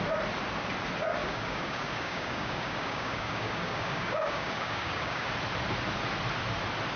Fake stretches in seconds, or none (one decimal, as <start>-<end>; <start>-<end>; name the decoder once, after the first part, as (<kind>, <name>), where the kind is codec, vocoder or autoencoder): 1.2-5.3 (codec, DAC)